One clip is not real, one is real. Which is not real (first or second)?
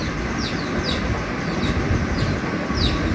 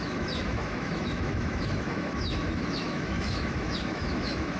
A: second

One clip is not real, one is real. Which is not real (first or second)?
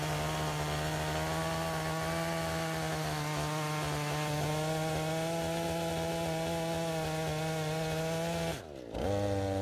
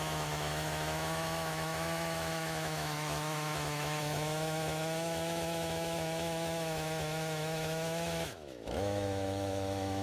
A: second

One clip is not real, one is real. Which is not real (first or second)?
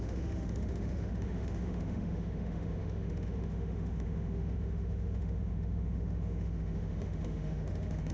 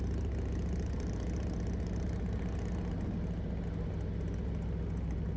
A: first